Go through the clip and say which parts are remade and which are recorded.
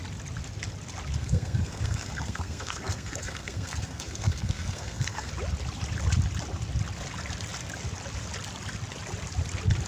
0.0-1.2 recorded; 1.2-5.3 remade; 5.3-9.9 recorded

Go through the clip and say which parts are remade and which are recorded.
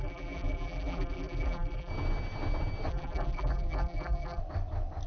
0.0-1.9 remade; 1.9-2.9 recorded; 2.9-4.4 remade; 4.4-5.1 recorded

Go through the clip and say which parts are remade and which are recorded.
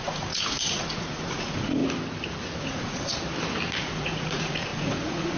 0.0-1.8 remade; 1.8-2.6 recorded; 2.6-3.1 remade; 3.1-3.8 recorded; 3.8-5.4 remade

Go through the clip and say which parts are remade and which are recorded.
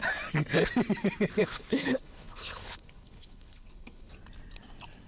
0.0-1.4 recorded; 1.4-4.1 remade; 4.1-5.1 recorded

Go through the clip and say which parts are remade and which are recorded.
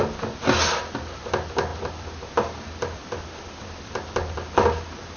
0.0-5.2 recorded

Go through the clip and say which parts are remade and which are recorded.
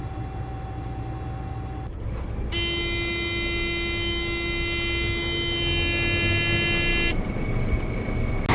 0.0-8.5 recorded